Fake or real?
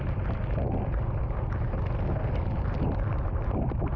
real